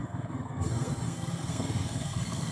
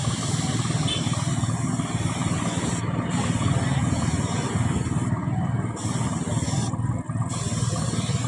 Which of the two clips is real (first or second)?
second